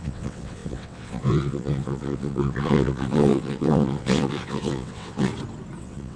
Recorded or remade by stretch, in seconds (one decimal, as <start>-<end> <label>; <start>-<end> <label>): 0.0-5.3 remade; 5.3-5.8 recorded; 5.8-6.2 remade